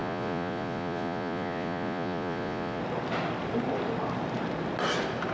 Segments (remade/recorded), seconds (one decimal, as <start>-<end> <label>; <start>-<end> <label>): 0.0-2.8 remade; 2.8-5.3 recorded

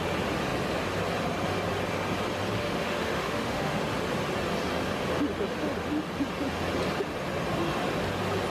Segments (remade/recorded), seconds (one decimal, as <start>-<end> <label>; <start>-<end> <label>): 0.0-2.6 recorded; 2.6-3.8 remade; 3.8-8.5 recorded

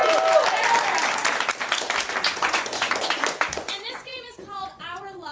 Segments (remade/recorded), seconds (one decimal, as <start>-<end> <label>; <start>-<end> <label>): 0.0-2.3 recorded; 2.3-5.3 remade

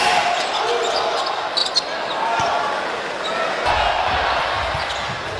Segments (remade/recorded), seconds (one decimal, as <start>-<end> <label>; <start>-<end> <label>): 0.0-5.4 recorded